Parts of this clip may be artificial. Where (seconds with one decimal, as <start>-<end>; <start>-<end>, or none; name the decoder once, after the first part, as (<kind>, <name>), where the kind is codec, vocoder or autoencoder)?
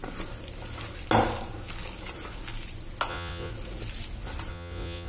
3.1-3.5 (vocoder, Vocos); 4.5-5.1